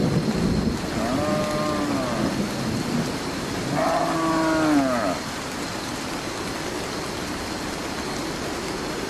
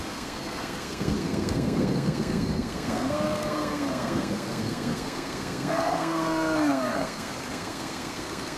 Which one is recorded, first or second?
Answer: first